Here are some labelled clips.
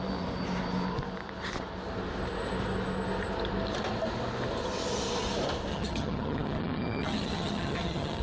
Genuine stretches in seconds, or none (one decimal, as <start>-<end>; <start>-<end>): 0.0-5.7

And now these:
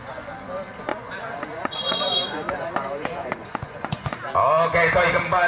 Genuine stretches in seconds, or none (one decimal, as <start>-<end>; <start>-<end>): 0.0-0.9; 4.2-5.5

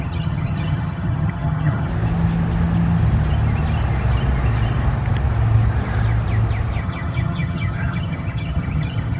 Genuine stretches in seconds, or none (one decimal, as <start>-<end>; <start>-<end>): 1.9-6.8

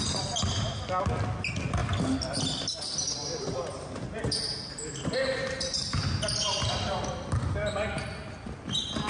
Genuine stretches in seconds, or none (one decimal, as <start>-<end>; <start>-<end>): 0.0-3.2; 6.0-9.1

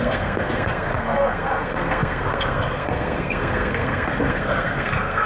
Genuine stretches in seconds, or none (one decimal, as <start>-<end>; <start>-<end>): none